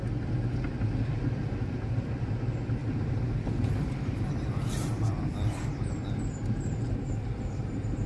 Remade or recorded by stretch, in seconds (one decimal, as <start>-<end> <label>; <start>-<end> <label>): 0.0-2.8 recorded; 2.8-5.2 remade; 5.2-6.4 recorded; 6.4-8.1 remade